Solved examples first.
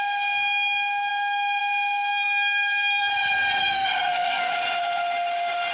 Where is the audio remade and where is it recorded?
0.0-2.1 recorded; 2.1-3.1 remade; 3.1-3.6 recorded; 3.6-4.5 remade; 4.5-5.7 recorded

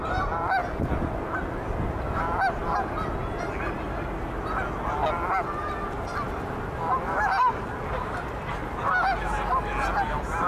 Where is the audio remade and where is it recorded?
0.0-10.5 recorded

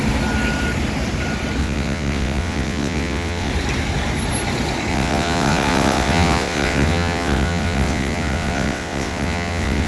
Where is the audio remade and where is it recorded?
0.0-1.6 recorded; 1.6-3.5 remade; 3.5-4.9 recorded; 4.9-9.9 remade

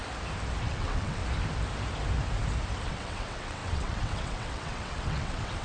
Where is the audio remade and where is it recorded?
0.0-0.6 recorded; 0.6-1.2 remade; 1.2-2.9 recorded; 2.9-5.6 remade

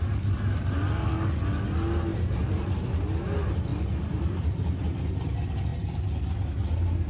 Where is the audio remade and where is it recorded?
0.0-2.1 recorded; 2.1-2.9 remade; 2.9-3.7 recorded; 3.7-4.8 remade; 4.8-7.1 recorded

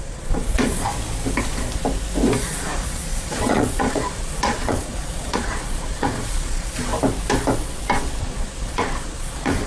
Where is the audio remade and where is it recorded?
0.0-0.9 remade; 0.9-2.4 recorded; 2.4-6.9 remade; 6.9-8.2 recorded; 8.2-9.7 remade